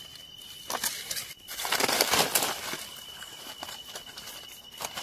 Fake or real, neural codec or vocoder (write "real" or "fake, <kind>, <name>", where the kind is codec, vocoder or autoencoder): fake, vocoder, BigVGAN v2